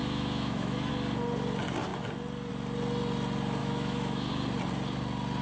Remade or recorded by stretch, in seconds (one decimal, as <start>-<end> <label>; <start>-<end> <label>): 0.0-0.9 remade; 0.9-3.6 recorded; 3.6-4.3 remade; 4.3-5.4 recorded